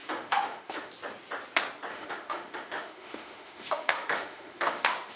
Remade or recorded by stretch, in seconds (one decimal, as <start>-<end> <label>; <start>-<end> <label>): 0.0-0.9 remade; 0.9-1.9 recorded; 1.9-5.2 remade